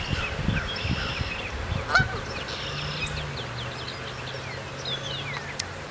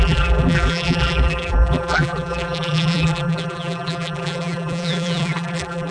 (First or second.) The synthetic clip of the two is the second